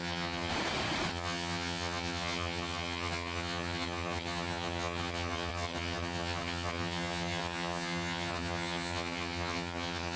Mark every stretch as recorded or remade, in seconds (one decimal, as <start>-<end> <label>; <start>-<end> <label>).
0.0-0.5 remade; 0.5-1.1 recorded; 1.1-10.2 remade